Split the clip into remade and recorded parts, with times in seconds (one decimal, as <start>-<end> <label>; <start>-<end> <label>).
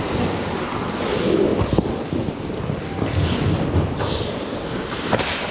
0.0-5.5 recorded